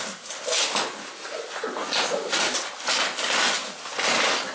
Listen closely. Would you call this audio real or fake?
real